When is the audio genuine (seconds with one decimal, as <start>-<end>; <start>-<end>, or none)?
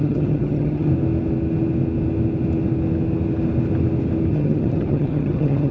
0.9-4.3